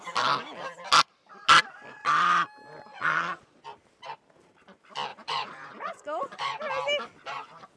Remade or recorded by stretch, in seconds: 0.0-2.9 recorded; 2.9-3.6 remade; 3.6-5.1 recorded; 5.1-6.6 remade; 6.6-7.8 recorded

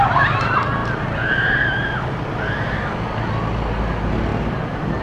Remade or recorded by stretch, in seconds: 0.0-5.0 recorded